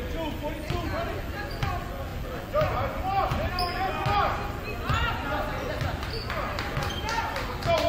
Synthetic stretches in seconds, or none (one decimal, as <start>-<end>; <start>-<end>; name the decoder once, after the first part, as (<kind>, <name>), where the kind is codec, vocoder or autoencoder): none